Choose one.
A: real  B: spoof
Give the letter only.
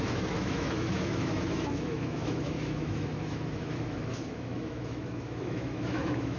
B